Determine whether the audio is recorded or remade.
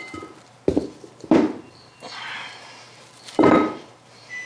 remade